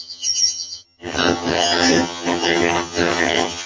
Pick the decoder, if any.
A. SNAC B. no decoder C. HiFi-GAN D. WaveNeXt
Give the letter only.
C